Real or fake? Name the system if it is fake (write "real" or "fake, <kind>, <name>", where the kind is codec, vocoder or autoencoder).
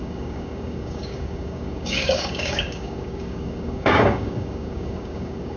fake, codec, DAC